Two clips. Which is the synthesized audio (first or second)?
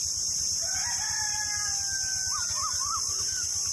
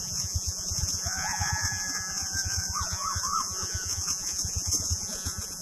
second